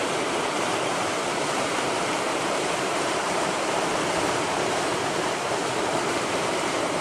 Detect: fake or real fake